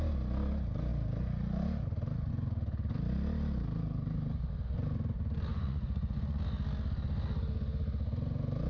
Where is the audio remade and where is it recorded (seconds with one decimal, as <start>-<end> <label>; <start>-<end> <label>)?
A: 0.0-5.5 recorded; 5.5-6.4 remade; 6.4-8.7 recorded